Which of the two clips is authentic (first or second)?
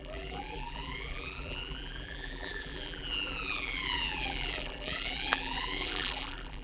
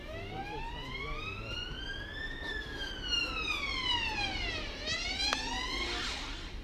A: second